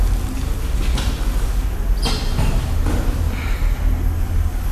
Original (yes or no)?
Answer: yes